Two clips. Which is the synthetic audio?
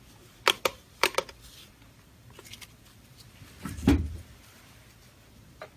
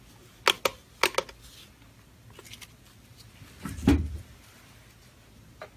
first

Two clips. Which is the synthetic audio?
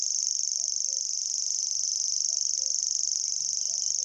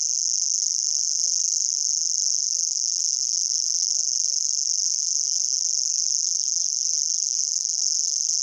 second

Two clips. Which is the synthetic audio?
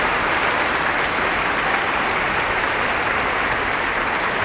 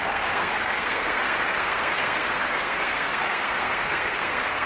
second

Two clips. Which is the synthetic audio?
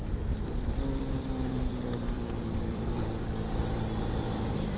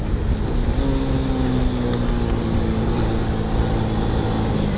first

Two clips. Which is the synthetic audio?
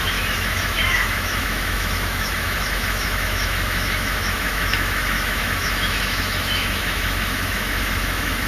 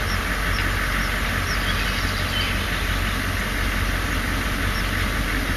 first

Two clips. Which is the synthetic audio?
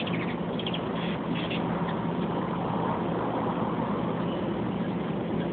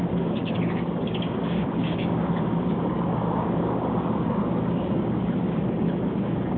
second